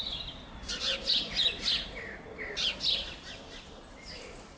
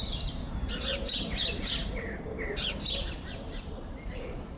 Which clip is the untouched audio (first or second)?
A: first